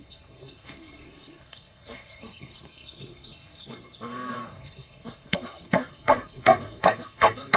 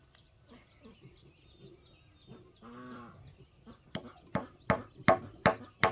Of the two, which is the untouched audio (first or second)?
second